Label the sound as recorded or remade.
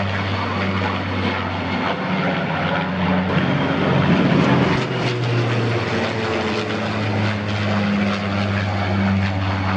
recorded